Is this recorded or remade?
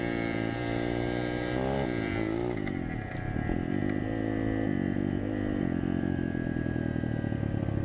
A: recorded